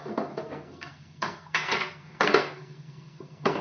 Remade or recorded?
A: remade